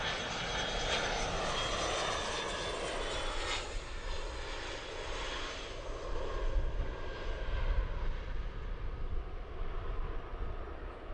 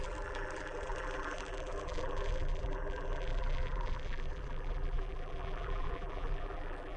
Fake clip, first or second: second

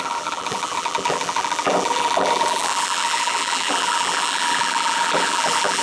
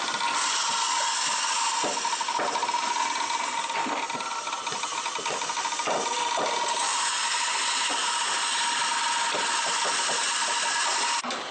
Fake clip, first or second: first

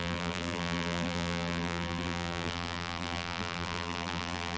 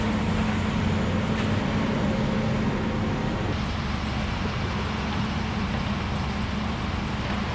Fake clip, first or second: first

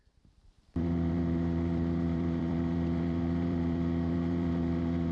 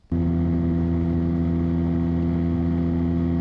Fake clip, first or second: first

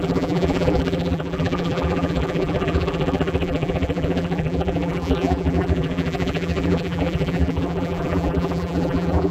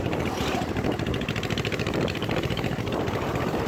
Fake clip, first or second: first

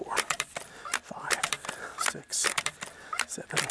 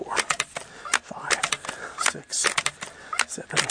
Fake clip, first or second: first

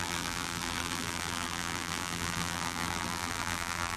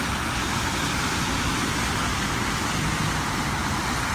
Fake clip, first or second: first